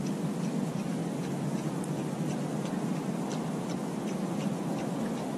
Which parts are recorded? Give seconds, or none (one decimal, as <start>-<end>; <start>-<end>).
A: 0.0-5.4